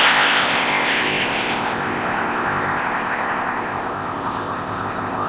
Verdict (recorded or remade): remade